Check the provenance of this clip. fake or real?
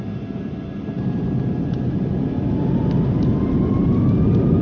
real